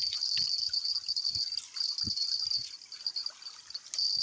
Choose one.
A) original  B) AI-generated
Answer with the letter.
A